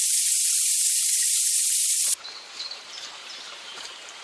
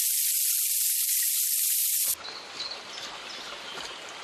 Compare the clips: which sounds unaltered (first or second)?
second